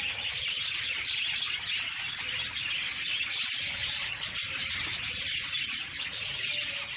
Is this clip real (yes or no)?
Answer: yes